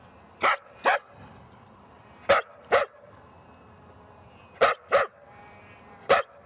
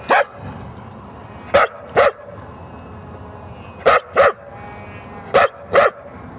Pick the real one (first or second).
second